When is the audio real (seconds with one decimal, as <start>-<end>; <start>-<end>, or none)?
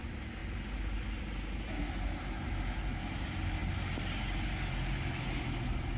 0.0-6.0